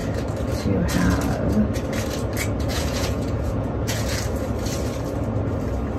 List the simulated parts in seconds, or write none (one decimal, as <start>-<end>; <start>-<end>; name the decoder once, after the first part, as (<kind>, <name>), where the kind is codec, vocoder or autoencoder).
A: 2.7-4.2 (vocoder, Vocos)